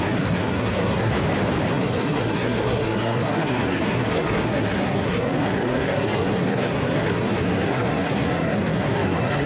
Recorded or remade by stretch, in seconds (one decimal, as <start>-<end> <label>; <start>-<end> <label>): 0.0-1.1 remade; 1.1-1.7 recorded; 1.7-9.5 remade